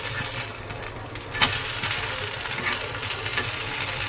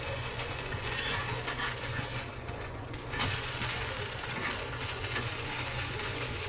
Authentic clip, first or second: first